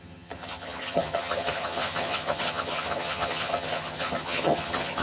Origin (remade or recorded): remade